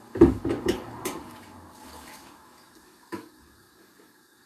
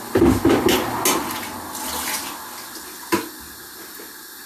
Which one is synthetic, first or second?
first